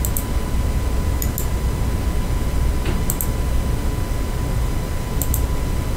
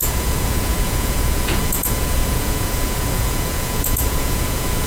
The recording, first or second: first